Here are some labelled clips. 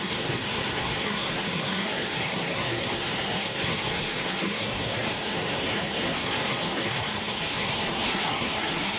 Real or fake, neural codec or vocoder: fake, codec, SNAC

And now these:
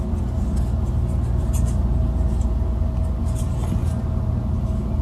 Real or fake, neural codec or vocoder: real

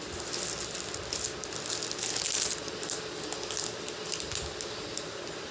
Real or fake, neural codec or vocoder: real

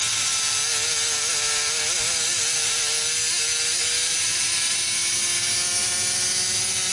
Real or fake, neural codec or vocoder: real